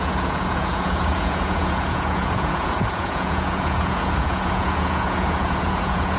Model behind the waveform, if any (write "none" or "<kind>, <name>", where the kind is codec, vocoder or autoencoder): vocoder, Vocos